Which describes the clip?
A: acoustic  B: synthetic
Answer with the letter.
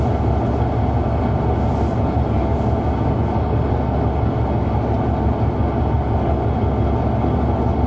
A